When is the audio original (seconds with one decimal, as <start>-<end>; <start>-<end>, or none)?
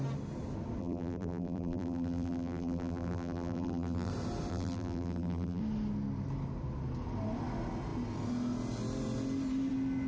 0.0-0.8; 4.1-4.5; 5.6-10.1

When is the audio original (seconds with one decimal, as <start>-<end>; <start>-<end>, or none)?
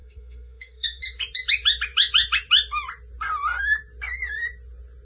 1.0-5.0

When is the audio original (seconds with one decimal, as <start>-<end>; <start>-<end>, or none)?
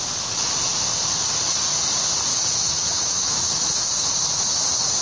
0.0-2.3; 4.1-5.0